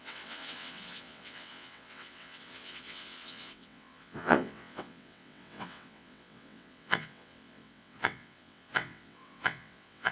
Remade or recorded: remade